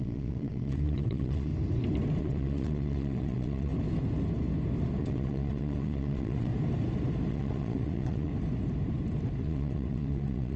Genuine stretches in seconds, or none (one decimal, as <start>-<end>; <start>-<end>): 1.5-2.2; 3.7-5.0; 6.5-7.3; 8.3-9.4